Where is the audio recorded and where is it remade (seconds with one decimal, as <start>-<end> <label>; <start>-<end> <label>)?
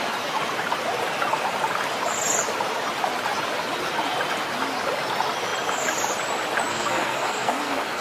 0.0-6.7 recorded; 6.7-8.0 remade